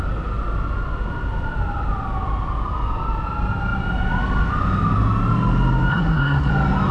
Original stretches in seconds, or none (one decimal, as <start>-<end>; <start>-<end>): 0.0-5.9; 6.5-6.9